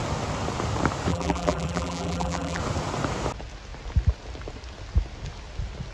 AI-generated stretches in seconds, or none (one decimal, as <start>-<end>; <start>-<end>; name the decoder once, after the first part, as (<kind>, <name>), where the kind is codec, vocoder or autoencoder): 1.1-2.6 (vocoder, BigVGAN v2)